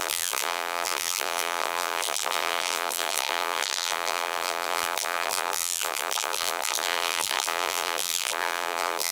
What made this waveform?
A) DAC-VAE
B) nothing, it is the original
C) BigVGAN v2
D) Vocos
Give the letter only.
C